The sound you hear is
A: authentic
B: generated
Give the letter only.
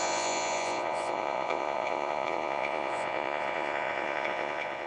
B